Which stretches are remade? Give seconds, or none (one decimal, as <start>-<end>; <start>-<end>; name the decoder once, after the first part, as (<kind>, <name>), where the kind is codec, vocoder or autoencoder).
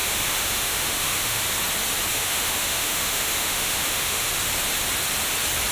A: 0.0-1.4 (autoencoder, DAC-VAE); 2.1-4.3